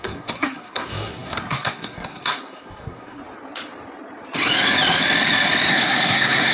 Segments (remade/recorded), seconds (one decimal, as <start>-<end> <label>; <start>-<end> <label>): 0.0-3.2 remade; 3.2-5.7 recorded; 5.7-6.5 remade